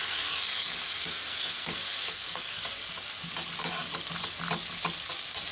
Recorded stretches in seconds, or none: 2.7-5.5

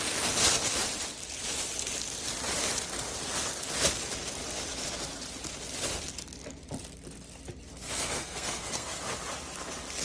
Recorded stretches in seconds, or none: 0.0-7.8; 9.0-10.0

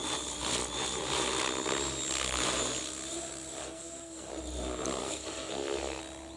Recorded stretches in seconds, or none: 0.0-3.6; 4.3-5.0; 6.0-6.4

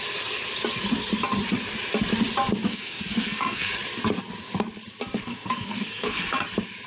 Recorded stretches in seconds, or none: 0.0-2.7; 3.7-5.3; 6.3-6.9

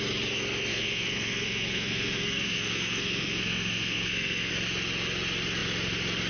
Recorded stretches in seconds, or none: 0.0-0.7; 4.5-6.3

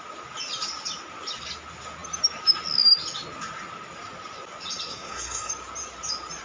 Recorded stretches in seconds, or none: 0.0-4.9; 5.5-6.4

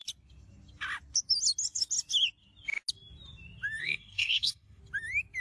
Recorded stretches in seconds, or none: 0.0-3.8; 4.8-5.4